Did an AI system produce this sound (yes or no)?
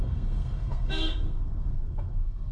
yes